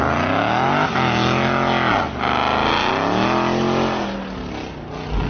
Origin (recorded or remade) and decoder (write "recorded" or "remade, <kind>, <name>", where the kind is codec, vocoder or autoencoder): recorded